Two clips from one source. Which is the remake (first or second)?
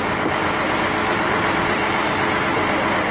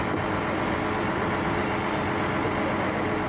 first